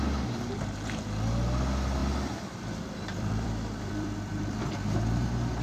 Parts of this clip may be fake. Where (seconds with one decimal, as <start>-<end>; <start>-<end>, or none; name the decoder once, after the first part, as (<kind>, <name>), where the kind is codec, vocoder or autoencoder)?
2.0-4.6 (vocoder, BigVGAN v2)